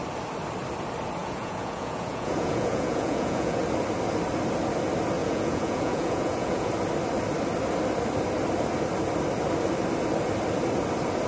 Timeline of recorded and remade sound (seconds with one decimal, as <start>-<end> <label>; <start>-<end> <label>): 0.0-1.2 recorded; 1.2-3.6 remade; 3.6-5.2 recorded; 5.2-6.7 remade; 6.7-11.3 recorded